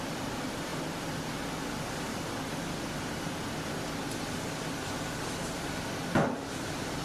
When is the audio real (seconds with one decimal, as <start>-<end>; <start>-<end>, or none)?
0.0-7.0

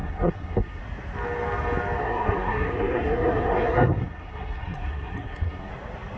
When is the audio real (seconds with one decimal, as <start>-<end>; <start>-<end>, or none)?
0.8-2.0; 5.7-6.2

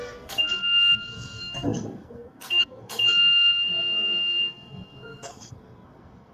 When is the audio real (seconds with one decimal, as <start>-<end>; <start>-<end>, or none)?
none

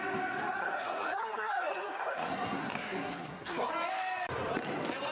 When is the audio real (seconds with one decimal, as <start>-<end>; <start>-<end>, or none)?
0.0-0.6; 3.7-5.1

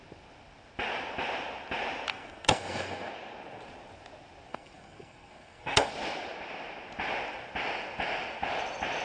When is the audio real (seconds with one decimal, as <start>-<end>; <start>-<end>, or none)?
0.0-2.1; 3.1-4.5; 5.9-9.0